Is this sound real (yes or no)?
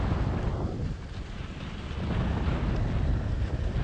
yes